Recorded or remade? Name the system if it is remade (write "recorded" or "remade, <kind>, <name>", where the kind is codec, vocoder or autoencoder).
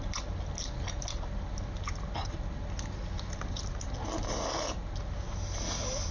recorded